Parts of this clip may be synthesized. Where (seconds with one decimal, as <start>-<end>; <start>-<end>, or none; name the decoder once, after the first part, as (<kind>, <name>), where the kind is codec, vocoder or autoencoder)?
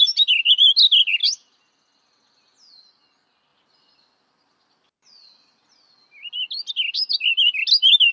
none